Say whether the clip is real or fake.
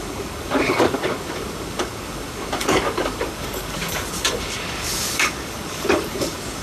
fake